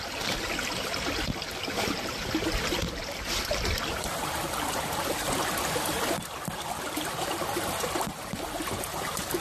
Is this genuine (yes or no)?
yes